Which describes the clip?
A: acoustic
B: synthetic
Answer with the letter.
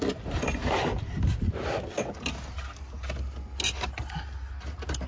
A